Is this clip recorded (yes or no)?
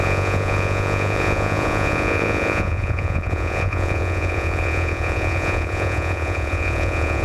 no